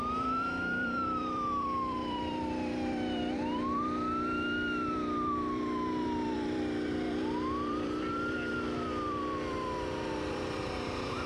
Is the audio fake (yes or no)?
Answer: yes